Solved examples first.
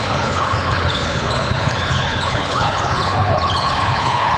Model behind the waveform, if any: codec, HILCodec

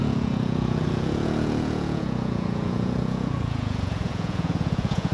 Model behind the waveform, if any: vocoder, Vocos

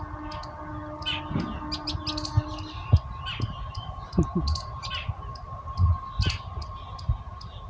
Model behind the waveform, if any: none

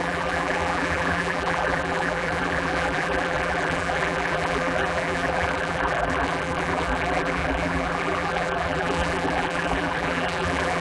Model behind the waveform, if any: vocoder, BigVGAN v2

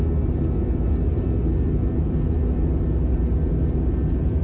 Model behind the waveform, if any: none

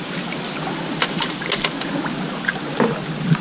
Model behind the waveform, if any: none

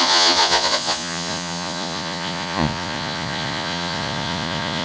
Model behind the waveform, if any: vocoder, Vocos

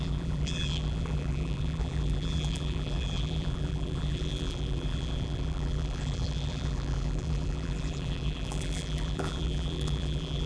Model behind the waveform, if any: vocoder, BigVGAN v2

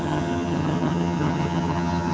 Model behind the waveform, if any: vocoder, HiFi-GAN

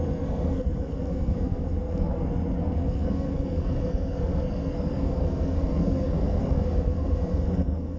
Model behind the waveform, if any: codec, SNAC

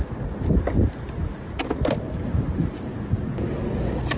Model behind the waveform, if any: none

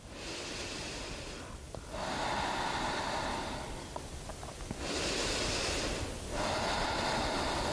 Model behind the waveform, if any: none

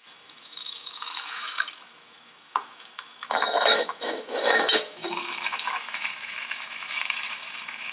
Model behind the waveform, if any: autoencoder, DAC-VAE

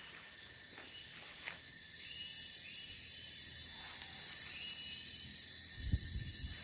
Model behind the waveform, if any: none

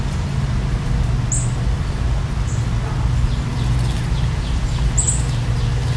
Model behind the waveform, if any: none